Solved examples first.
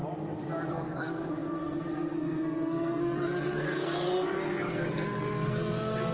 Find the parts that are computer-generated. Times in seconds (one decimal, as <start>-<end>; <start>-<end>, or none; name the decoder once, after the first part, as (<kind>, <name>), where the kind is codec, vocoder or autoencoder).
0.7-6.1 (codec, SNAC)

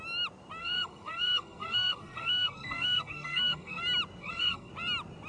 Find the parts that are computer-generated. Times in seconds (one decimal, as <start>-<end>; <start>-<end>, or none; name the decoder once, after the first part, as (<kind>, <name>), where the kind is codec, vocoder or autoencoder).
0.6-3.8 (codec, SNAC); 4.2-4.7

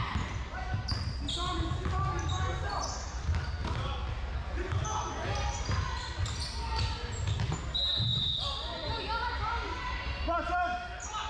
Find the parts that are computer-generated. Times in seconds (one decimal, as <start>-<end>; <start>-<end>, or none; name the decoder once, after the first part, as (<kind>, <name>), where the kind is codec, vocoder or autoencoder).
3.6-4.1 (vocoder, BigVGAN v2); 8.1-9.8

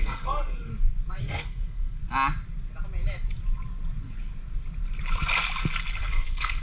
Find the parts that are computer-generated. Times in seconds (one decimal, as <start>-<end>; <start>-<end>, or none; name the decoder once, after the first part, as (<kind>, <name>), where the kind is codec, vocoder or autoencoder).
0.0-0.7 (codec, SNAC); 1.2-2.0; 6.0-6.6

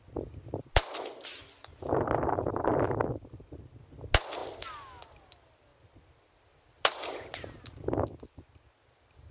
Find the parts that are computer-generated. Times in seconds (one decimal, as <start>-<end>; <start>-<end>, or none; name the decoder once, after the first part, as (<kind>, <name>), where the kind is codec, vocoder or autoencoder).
none

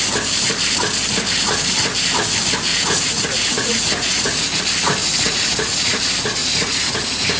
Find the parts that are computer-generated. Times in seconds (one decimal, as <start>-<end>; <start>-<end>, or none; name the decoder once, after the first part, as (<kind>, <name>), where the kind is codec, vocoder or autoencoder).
2.7-4.6 (vocoder, Vocos); 5.0-6.0; 6.4-7.4